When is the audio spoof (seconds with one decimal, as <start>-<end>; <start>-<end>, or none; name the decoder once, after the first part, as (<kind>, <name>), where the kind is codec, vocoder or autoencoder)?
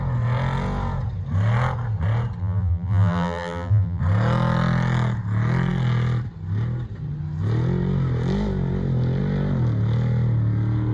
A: 2.4-4.0 (vocoder, BigVGAN v2)